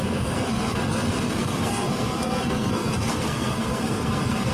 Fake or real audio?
fake